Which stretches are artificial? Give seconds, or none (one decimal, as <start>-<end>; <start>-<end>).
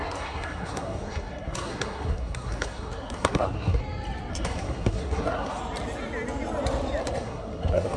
0.0-3.8; 4.3-5.6; 7.0-8.0